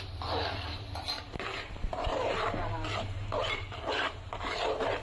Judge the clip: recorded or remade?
remade